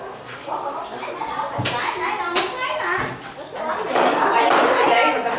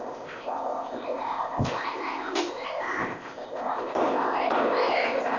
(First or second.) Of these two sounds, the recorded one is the first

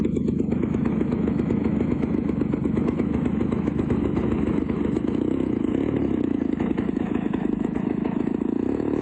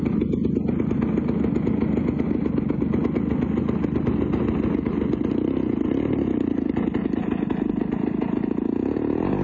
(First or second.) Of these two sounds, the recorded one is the second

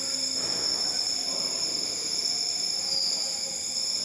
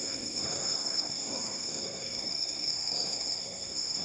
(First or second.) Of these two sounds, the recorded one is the first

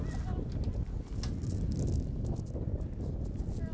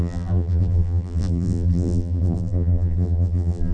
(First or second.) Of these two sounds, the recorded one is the first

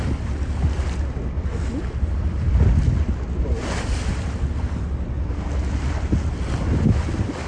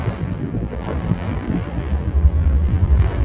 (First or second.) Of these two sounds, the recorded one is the first